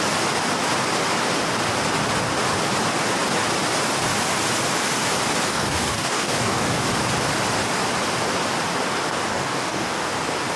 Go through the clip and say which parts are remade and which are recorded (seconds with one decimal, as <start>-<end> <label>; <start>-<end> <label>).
0.0-5.5 recorded; 5.5-6.8 remade; 6.8-9.3 recorded; 9.3-10.1 remade; 10.1-10.6 recorded